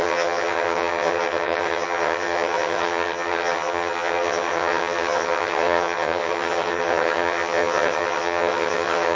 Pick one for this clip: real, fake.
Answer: fake